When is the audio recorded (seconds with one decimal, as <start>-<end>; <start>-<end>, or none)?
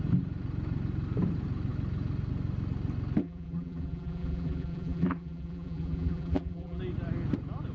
0.0-3.2; 6.8-7.7